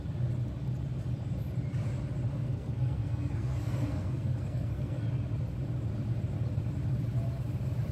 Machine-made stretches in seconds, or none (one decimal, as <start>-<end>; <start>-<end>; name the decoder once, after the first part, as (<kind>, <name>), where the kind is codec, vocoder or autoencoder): 2.3-5.1 (codec, SNAC)

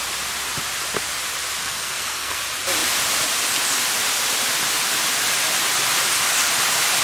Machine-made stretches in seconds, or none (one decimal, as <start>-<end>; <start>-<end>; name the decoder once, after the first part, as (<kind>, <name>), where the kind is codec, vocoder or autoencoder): 1.6-2.4 (codec, SNAC)

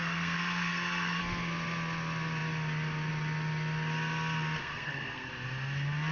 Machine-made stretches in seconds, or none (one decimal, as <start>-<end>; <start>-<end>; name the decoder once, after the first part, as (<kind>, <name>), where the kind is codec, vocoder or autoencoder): 0.0-1.2 (codec, SNAC); 4.6-5.3

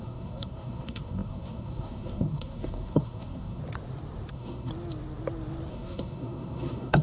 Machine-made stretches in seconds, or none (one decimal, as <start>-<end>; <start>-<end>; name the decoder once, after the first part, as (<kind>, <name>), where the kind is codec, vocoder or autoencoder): 0.0-3.6 (codec, SNAC); 4.3-4.7; 5.7-7.0